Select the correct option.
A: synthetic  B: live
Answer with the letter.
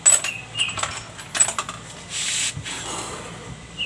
B